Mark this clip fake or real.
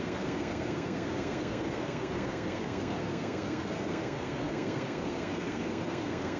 fake